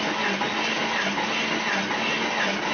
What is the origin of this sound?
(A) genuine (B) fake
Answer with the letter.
A